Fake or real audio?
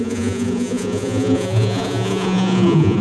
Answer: fake